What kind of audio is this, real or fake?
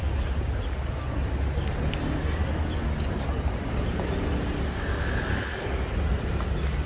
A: real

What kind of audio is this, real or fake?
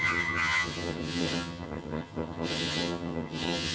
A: fake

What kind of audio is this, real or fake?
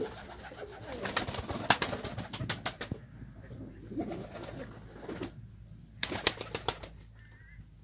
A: real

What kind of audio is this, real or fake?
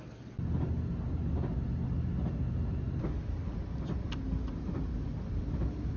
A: real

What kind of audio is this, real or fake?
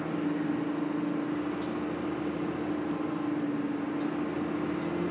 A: real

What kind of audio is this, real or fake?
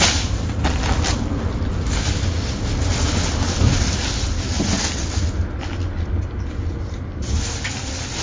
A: real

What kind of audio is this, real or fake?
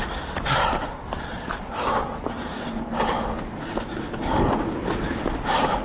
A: real